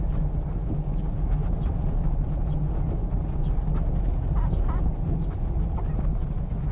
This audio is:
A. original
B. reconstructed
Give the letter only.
A